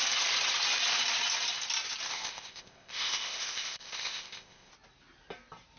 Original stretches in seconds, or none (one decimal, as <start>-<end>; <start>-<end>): 0.0-2.1; 4.7-5.8